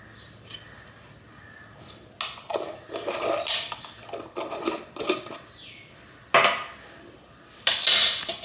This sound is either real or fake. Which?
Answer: real